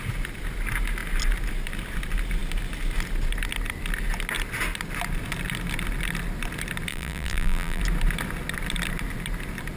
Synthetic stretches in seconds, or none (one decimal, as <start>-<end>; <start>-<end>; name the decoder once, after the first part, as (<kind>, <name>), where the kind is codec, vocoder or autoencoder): 6.9-7.8 (vocoder, BigVGAN v2)